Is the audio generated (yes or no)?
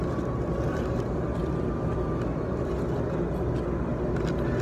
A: no